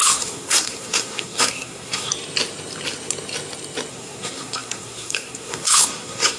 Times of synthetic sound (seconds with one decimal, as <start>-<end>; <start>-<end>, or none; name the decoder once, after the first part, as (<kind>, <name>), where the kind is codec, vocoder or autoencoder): 0.0-2.1 (codec, SNAC); 3.9-6.4